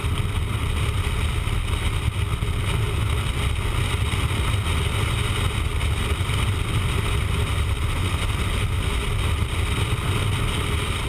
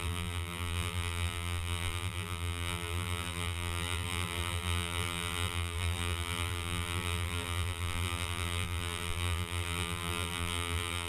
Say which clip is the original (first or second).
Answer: first